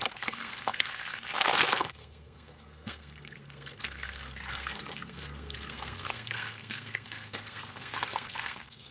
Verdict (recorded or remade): remade